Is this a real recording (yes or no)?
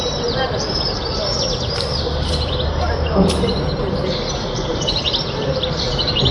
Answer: no